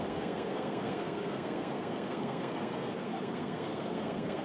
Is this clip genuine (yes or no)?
no